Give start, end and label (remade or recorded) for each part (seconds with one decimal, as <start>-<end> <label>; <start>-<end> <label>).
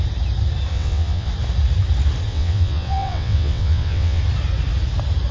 0.0-0.7 recorded; 0.7-1.3 remade; 1.3-2.3 recorded; 2.3-4.2 remade; 4.2-5.3 recorded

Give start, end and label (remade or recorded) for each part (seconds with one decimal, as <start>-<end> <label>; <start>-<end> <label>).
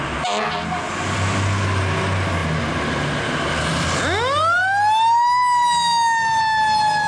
0.0-7.1 recorded